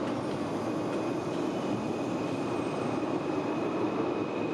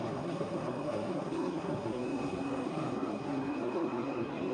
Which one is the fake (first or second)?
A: second